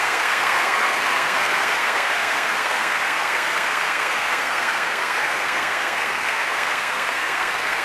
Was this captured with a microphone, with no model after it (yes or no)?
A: no